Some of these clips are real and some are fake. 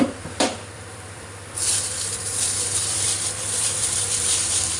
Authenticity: fake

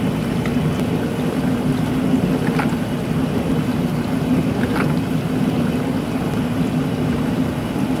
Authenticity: real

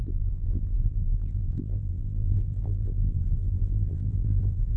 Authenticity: fake